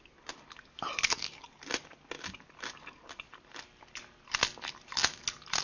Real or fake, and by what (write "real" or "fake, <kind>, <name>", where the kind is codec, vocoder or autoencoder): real